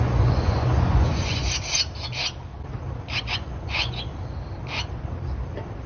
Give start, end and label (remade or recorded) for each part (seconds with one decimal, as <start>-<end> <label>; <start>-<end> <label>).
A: 0.0-1.4 remade; 1.4-3.2 recorded; 3.2-4.1 remade; 4.1-5.9 recorded